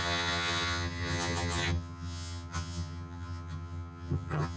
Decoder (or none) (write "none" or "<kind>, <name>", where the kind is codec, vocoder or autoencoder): vocoder, HiFi-GAN